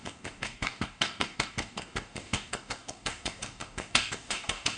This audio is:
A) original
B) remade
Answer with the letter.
B